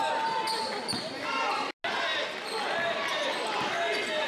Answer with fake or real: real